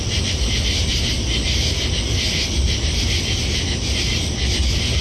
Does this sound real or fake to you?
real